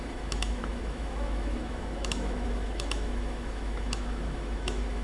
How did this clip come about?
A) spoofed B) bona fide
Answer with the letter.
A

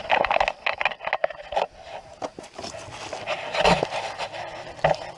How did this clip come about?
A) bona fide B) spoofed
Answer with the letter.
A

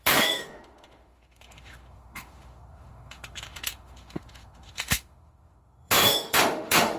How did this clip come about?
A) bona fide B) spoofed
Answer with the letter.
B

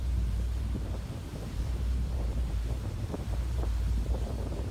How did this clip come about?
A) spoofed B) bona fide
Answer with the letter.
A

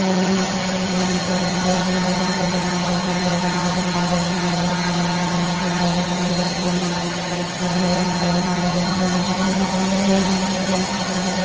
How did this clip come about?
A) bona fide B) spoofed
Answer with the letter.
B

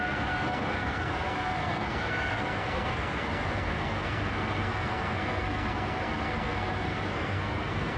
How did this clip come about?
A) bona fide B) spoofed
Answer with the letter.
B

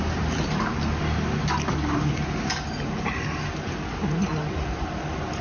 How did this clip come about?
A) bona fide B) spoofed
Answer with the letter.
A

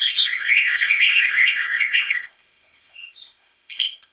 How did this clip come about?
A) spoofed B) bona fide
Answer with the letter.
A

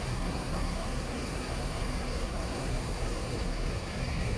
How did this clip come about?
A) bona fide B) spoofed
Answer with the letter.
B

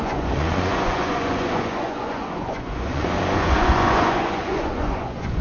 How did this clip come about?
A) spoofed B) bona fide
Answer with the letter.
A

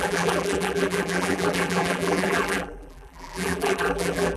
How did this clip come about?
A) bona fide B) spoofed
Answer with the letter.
B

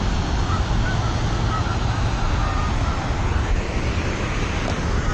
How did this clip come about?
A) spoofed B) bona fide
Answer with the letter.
B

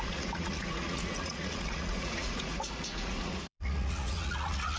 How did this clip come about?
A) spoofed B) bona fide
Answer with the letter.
A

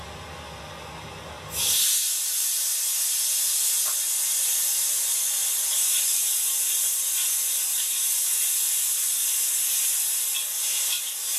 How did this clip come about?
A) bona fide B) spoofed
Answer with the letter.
A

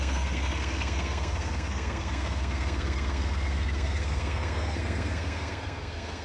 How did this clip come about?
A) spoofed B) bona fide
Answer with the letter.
A